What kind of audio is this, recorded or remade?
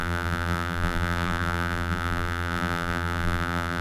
remade